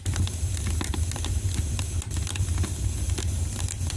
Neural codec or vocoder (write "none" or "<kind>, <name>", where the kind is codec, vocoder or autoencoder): none